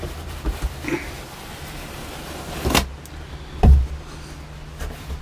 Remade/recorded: recorded